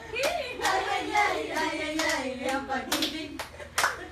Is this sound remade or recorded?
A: recorded